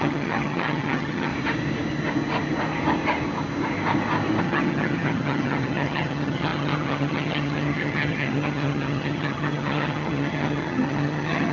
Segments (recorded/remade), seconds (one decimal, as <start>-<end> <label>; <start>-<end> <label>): 0.0-1.3 remade; 1.3-4.4 recorded; 4.4-11.5 remade